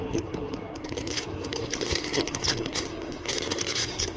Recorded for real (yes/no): no